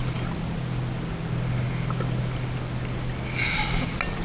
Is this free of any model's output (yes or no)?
yes